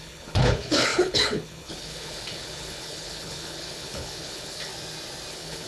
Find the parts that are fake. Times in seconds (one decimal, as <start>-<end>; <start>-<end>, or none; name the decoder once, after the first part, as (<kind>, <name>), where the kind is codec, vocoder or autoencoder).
0.0-4.7 (codec, HILCodec); 5.3-5.7